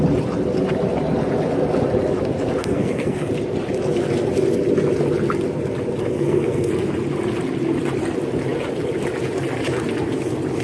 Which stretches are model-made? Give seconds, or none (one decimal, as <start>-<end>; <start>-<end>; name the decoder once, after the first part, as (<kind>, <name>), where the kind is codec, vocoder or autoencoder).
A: 2.6-3.3 (codec, SNAC); 6.0-6.7